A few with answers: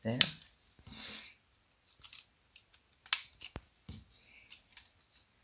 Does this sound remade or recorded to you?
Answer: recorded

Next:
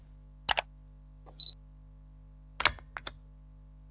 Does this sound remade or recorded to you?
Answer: recorded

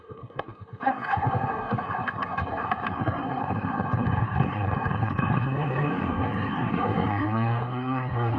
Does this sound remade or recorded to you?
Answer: remade